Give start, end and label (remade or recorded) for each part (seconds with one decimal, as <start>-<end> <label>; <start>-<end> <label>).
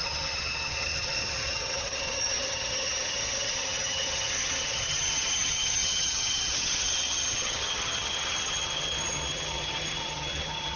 0.0-10.8 remade